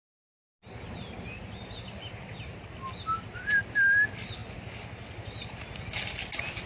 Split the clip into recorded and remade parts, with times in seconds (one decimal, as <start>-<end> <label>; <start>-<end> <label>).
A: 0.0-6.7 recorded